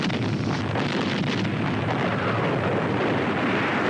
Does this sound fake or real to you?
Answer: real